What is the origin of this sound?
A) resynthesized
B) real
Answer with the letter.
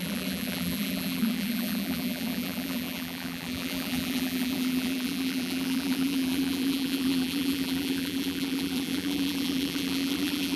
A